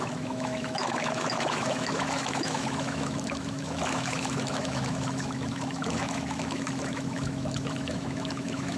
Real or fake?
fake